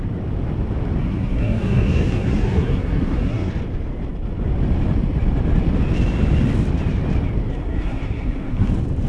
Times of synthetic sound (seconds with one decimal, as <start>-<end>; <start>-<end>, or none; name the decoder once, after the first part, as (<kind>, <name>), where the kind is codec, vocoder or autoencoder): 1.0-3.5 (codec, SNAC); 7.5-8.7